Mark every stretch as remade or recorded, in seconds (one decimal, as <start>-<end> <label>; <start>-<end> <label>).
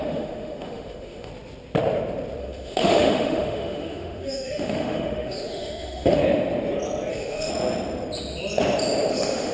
0.0-1.3 remade; 1.3-2.4 recorded; 2.4-6.2 remade; 6.2-7.1 recorded; 7.1-7.5 remade; 7.5-9.1 recorded; 9.1-9.5 remade